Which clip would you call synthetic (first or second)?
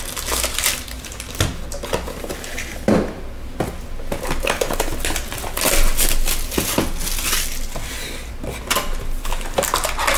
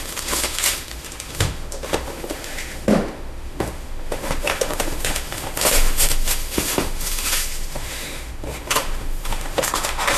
second